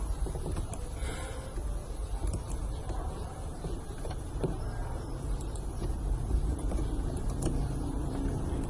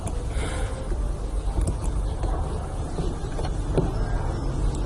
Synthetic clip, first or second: first